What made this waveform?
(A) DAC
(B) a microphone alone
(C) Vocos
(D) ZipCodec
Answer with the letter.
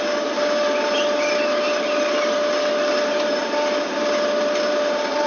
B